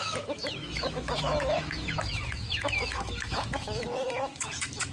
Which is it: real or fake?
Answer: fake